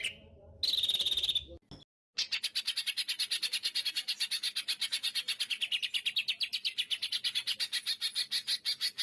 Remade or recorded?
recorded